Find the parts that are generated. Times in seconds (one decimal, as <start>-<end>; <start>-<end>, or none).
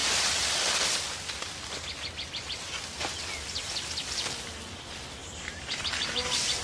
5.2-6.6